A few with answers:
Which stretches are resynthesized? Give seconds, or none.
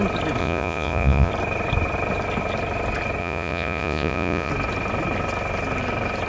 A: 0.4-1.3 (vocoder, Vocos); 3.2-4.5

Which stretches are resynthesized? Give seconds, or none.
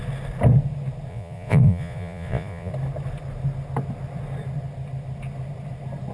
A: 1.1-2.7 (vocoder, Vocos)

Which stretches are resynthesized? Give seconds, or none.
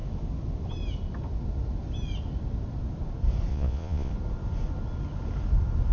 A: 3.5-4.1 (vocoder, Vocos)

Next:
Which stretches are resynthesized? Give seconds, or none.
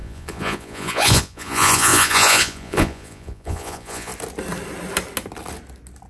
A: 0.0-4.1 (vocoder, Vocos)